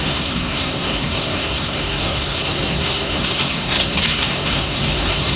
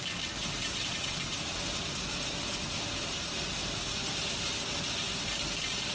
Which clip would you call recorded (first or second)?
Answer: second